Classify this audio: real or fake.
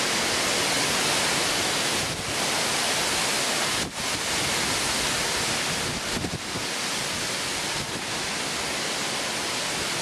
real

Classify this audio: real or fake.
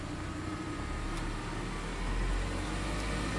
real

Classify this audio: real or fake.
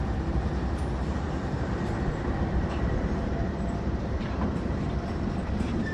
fake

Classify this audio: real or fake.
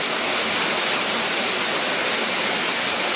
fake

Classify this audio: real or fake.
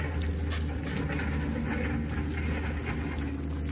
real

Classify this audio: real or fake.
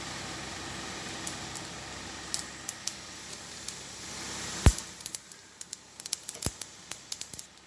real